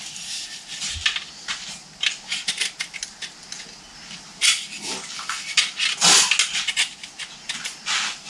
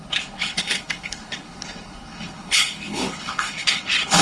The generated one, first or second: second